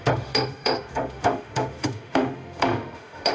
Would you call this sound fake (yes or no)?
yes